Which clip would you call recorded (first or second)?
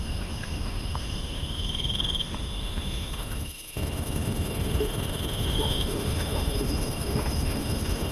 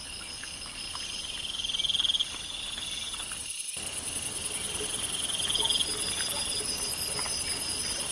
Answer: second